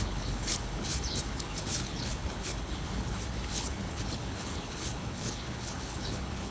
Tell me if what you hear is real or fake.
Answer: fake